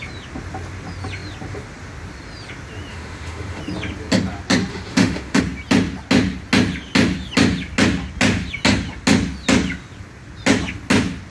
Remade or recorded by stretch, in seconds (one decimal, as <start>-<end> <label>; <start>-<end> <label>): 0.0-2.9 recorded; 2.9-3.6 remade; 3.6-4.7 recorded; 4.7-5.4 remade; 5.4-11.3 recorded